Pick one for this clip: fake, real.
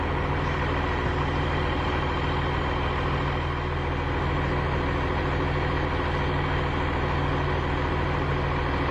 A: real